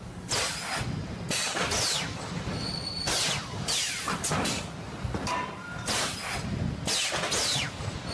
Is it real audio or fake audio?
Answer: real